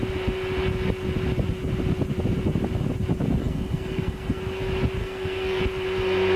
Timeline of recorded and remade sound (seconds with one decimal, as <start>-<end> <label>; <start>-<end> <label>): 0.0-3.4 recorded; 3.4-4.4 remade; 4.4-5.0 recorded; 5.0-5.6 remade; 5.6-6.4 recorded